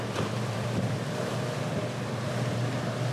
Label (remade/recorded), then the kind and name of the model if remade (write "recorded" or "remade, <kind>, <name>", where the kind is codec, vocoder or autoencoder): remade, vocoder, BigVGAN v2